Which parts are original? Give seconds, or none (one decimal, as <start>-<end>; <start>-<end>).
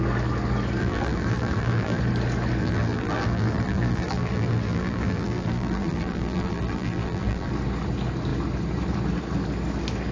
0.0-0.8; 2.0-2.6; 7.5-10.1